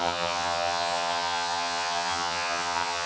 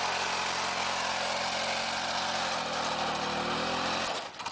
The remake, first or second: first